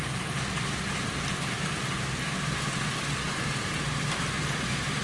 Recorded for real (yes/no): no